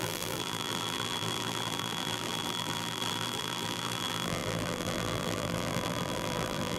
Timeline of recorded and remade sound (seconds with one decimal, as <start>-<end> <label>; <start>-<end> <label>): 0.0-6.8 remade